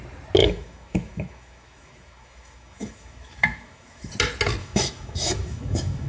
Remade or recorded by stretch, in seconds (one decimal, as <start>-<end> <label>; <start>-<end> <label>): 0.0-0.4 recorded; 0.4-4.1 remade; 4.1-4.6 recorded; 4.6-6.1 remade